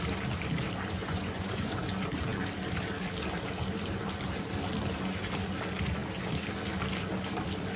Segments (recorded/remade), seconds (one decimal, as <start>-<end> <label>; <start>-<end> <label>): 0.0-1.0 recorded; 1.0-1.7 remade; 1.7-7.8 recorded